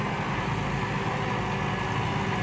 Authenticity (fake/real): real